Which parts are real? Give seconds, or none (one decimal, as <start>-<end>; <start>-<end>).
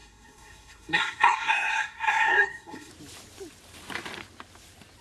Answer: 2.9-5.0